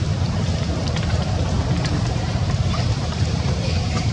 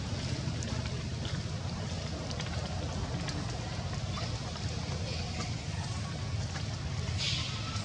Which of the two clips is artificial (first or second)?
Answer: first